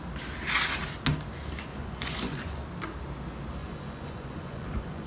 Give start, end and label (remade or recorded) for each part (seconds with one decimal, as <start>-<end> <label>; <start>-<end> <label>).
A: 0.0-1.7 recorded; 1.7-2.6 remade; 2.6-3.6 recorded; 3.6-5.1 remade